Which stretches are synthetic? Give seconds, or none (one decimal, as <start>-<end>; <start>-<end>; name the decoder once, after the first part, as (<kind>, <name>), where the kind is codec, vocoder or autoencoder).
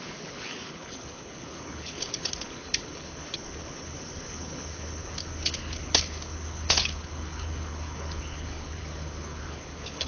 0.0-10.1 (codec, HILCodec)